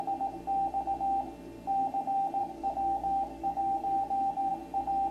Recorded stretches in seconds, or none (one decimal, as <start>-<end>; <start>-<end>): 0.0-2.4; 4.5-5.1